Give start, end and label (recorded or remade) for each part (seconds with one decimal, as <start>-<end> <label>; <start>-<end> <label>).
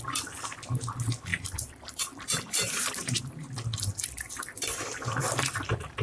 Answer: 0.0-1.3 recorded; 1.3-3.2 remade; 3.2-3.7 recorded; 3.7-5.2 remade; 5.2-6.0 recorded